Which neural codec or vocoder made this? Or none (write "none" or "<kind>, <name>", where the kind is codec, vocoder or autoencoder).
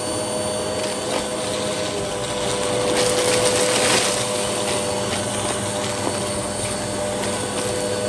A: none